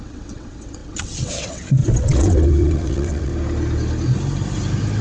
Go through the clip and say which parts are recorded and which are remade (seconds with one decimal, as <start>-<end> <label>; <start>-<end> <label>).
0.0-3.3 remade; 3.3-5.0 recorded